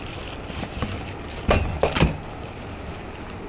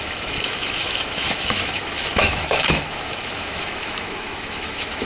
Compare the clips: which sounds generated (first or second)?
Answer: second